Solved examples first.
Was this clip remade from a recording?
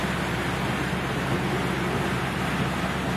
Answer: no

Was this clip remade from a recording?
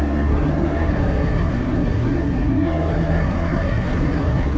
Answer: yes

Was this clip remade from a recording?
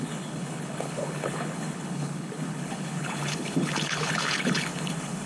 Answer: yes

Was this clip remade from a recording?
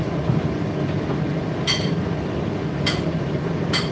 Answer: no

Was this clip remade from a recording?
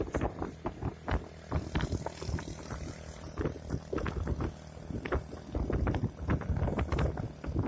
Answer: no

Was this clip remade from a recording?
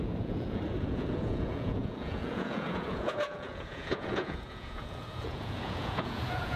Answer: yes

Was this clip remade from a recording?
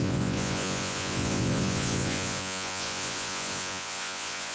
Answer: yes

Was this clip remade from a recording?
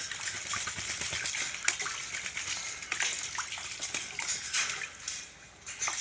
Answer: no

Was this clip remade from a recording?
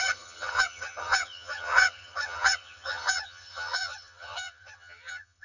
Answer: yes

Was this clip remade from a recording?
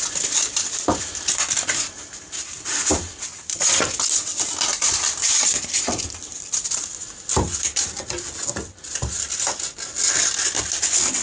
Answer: no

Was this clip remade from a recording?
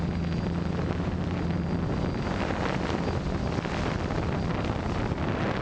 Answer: no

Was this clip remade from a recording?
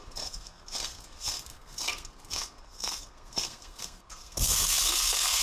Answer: yes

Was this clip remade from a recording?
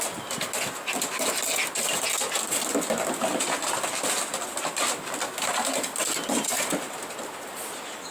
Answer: no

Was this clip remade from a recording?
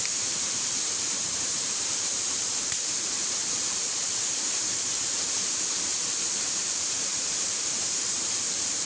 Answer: yes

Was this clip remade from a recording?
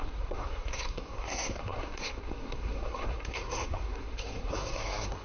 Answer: yes